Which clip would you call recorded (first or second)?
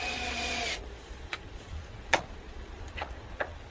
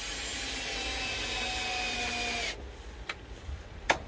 second